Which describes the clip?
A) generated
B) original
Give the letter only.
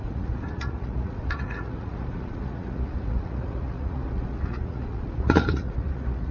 A